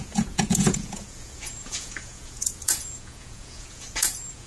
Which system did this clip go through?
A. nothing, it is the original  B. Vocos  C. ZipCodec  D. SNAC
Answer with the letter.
B